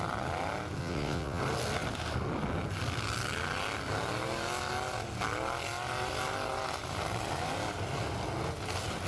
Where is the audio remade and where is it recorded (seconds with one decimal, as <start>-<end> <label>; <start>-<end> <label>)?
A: 0.0-0.8 recorded; 0.8-1.4 remade; 1.4-9.1 recorded